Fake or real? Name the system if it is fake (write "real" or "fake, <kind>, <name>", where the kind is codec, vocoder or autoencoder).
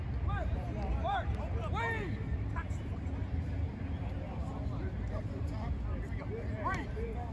real